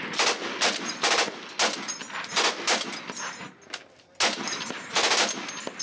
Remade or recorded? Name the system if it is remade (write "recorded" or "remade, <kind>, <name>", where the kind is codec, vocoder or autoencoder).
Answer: recorded